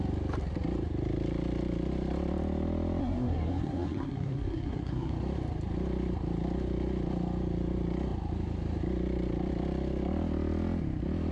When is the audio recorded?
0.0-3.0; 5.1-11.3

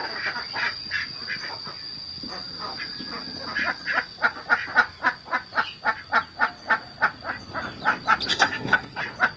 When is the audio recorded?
0.0-8.3; 9.0-9.4